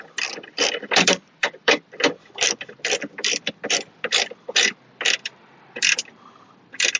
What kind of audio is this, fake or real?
fake